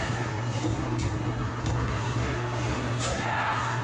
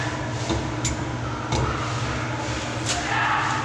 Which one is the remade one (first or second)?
first